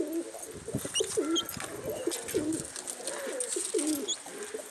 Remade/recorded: recorded